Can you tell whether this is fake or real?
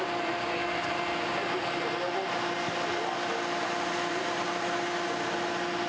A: real